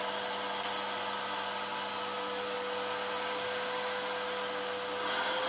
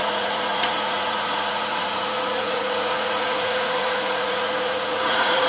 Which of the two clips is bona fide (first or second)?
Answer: first